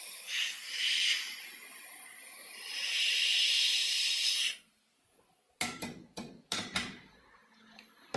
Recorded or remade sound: remade